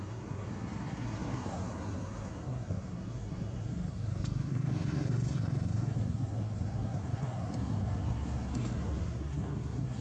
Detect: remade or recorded remade